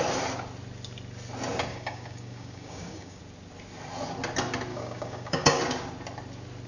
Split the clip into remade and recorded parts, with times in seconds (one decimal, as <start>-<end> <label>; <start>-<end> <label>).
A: 0.0-1.7 recorded; 1.7-3.2 remade; 3.2-4.7 recorded; 4.7-5.6 remade; 5.6-6.7 recorded